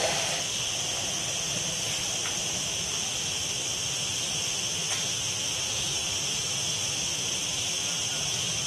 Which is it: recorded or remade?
recorded